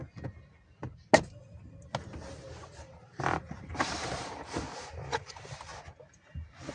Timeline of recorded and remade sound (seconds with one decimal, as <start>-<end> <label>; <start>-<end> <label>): 0.0-2.6 recorded; 2.6-5.7 remade; 5.7-6.7 recorded